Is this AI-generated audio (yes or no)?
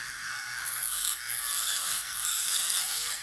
yes